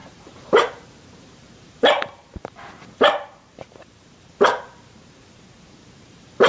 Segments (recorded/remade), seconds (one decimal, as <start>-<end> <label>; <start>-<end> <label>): 0.0-6.5 remade